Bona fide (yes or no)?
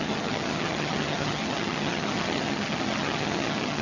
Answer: no